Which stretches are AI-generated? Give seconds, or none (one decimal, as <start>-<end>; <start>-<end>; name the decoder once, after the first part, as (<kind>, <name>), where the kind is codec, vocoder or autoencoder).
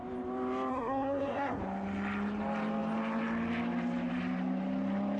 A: 0.7-1.6 (codec, SNAC)